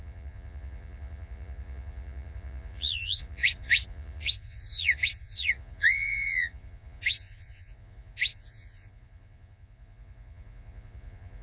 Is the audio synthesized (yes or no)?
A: yes